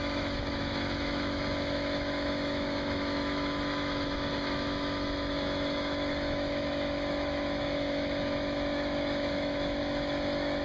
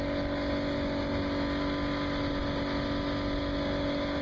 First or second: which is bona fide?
second